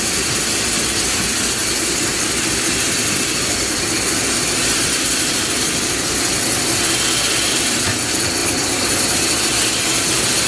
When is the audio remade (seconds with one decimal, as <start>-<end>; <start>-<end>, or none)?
1.6-6.3; 8.4-9.2